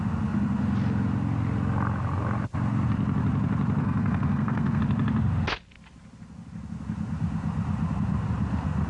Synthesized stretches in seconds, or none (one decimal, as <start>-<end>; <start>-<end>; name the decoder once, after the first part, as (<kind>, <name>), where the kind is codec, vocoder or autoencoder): 3.8-4.8 (codec, SNAC)